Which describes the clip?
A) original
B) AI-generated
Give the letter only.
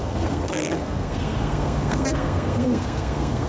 B